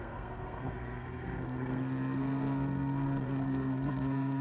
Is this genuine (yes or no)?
no